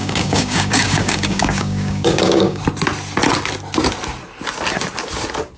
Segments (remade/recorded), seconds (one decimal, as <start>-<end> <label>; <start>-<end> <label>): 0.0-2.6 remade; 2.6-5.6 recorded